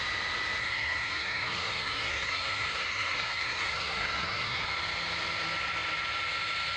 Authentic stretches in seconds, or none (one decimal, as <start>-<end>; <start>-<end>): 0.0-0.6; 4.7-6.8